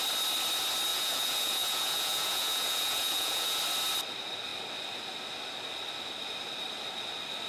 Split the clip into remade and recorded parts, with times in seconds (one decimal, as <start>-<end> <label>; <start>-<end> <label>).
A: 0.0-0.9 recorded; 0.9-3.6 remade; 3.6-7.5 recorded